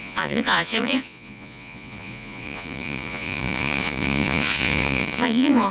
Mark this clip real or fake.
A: fake